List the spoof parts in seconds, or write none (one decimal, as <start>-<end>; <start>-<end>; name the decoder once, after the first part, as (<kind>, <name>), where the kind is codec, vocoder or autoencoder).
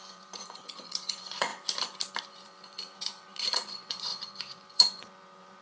0.0-1.5 (vocoder, Vocos); 2.2-5.6